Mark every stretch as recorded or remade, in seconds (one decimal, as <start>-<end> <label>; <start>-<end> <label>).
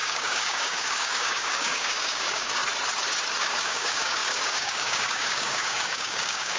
0.0-2.6 remade; 2.6-3.4 recorded; 3.4-6.6 remade